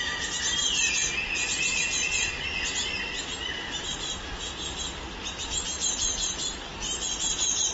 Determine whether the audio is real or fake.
real